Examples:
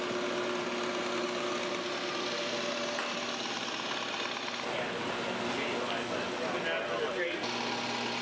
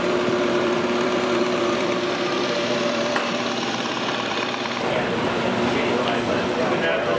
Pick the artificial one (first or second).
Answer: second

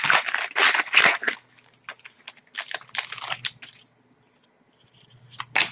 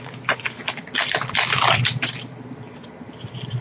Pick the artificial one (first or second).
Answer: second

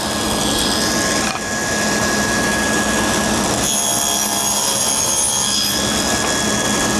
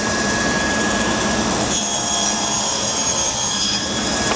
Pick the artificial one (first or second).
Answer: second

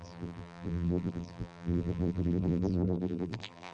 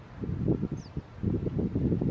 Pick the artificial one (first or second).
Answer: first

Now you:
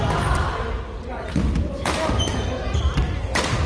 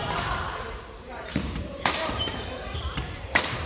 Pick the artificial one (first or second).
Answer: second